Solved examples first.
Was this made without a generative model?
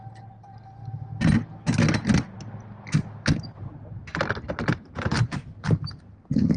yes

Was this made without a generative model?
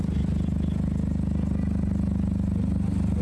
yes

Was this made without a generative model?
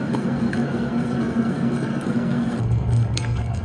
no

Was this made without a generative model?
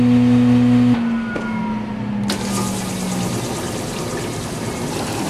yes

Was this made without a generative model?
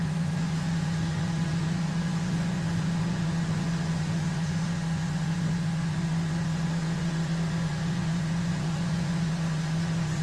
no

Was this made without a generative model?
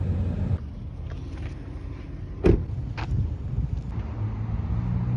yes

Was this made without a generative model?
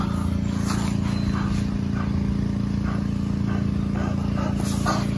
yes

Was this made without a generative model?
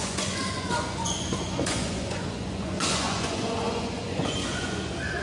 no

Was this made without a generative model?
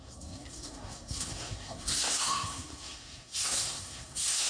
no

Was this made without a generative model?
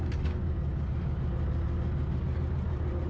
yes